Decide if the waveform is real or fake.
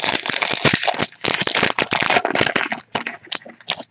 real